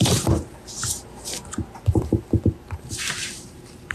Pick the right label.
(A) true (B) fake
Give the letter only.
B